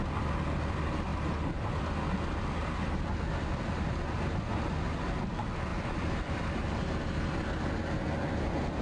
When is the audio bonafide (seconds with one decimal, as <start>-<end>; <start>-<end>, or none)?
0.0-1.1; 4.4-5.7; 6.8-8.8